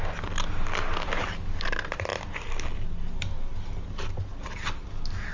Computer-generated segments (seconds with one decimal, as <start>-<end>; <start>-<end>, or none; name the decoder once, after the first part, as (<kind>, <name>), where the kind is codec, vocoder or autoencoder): none